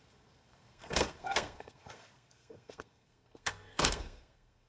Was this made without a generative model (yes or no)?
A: no